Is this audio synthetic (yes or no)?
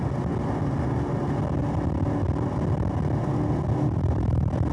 no